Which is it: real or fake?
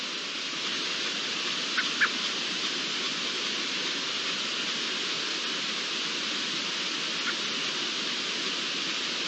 real